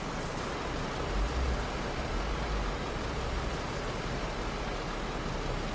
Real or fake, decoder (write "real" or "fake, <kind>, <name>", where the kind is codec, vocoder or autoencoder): real